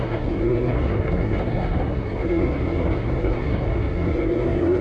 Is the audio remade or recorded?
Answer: remade